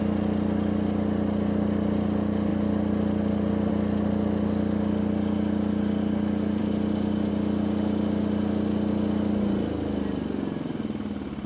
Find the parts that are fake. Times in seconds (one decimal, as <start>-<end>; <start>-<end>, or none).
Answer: none